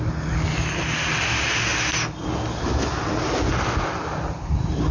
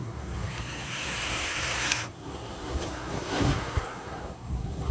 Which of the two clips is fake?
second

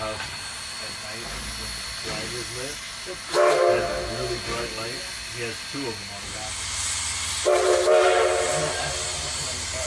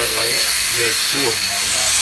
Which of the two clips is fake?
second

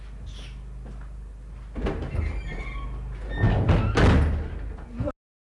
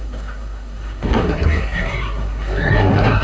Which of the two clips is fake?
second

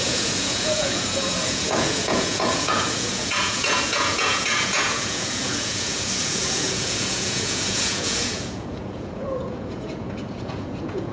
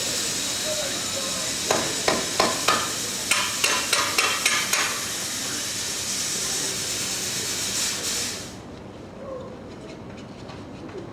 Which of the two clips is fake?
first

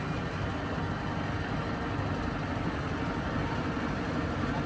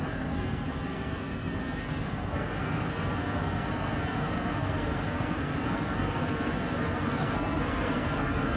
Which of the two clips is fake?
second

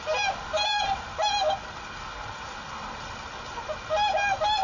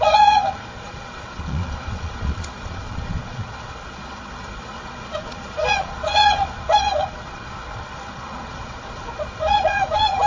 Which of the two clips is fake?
second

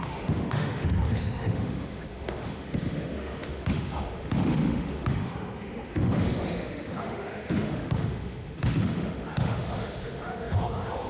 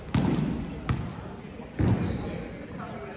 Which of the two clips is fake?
first